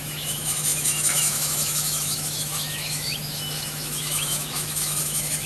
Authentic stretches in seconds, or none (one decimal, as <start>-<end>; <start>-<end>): none